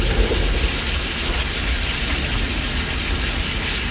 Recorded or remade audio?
recorded